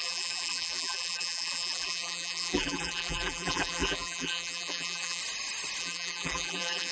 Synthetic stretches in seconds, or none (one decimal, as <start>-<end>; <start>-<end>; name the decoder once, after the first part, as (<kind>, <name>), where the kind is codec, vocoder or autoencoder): 0.0-5.2 (vocoder, BigVGAN v2); 5.8-6.9